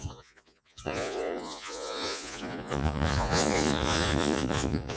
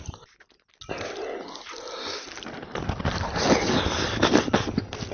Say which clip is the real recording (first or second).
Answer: second